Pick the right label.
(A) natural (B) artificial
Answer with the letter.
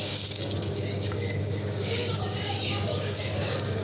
B